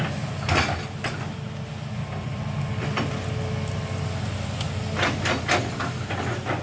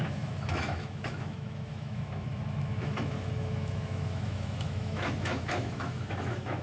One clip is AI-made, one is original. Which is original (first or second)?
first